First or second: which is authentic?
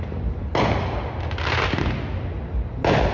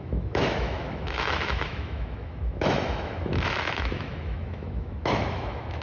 first